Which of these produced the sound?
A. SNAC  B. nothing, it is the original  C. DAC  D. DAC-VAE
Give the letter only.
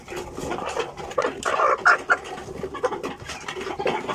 B